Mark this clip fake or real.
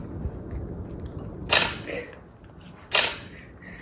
real